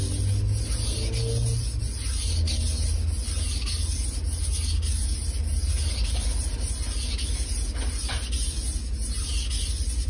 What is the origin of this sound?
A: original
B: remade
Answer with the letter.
A